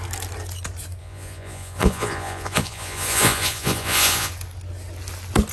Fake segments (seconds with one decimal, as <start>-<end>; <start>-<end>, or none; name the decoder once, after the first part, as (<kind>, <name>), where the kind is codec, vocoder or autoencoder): 1.0-4.3 (vocoder, Vocos)